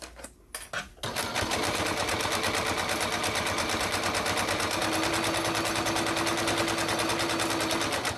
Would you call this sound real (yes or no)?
yes